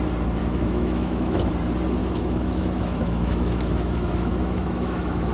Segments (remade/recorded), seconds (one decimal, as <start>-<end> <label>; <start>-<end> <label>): 0.0-0.4 recorded; 0.4-1.5 remade; 1.5-2.0 recorded; 2.0-5.3 remade